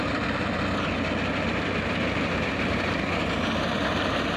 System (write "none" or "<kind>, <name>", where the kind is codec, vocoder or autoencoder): none